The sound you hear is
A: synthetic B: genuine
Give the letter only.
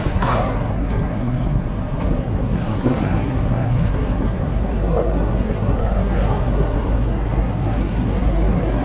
A